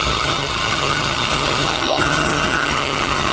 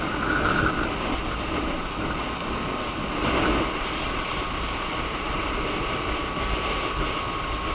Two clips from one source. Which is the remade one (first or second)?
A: first